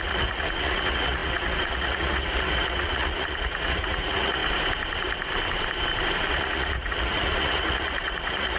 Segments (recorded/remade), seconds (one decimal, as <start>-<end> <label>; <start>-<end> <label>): 0.0-4.4 remade; 4.4-6.3 recorded; 6.3-8.6 remade